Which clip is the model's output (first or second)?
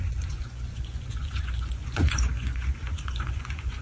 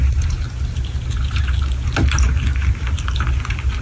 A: first